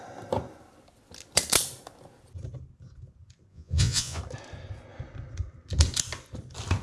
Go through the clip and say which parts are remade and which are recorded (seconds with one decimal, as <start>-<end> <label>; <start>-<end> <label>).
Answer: 0.0-3.5 recorded; 3.5-4.2 remade; 4.2-6.8 recorded